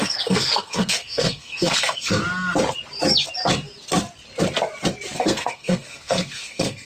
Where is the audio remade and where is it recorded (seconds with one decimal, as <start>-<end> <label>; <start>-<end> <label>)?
0.0-2.2 remade; 2.2-5.2 recorded; 5.2-6.8 remade